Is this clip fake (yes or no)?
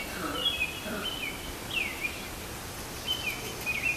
no